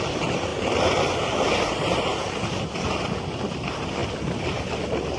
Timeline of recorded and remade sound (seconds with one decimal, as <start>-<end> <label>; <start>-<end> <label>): 0.0-2.1 recorded; 2.1-3.1 remade; 3.1-5.2 recorded